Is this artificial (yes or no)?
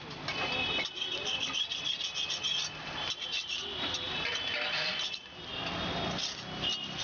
no